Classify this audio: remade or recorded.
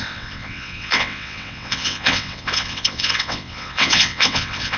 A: remade